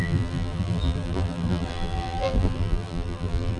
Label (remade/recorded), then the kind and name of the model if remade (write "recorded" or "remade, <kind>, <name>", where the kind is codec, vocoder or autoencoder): remade, vocoder, BigVGAN v2